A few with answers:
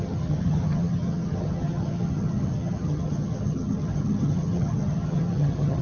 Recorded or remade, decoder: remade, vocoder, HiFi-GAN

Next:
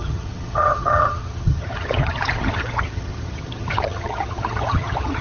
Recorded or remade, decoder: remade, vocoder, HiFi-GAN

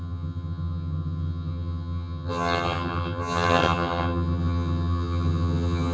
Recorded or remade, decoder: remade, vocoder, HiFi-GAN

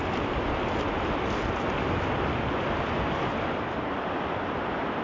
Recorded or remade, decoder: recorded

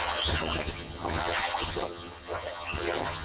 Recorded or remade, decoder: remade, vocoder, HiFi-GAN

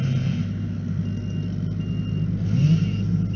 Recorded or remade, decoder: recorded